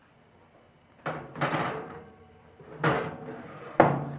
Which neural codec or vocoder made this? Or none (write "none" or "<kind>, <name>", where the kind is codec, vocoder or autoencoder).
vocoder, BigVGAN v2